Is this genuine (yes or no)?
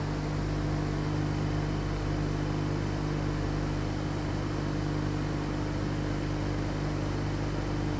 yes